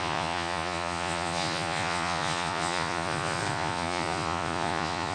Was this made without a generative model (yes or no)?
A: no